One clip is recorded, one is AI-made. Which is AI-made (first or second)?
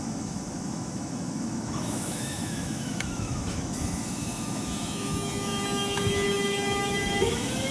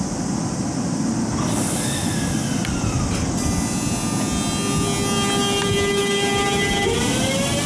first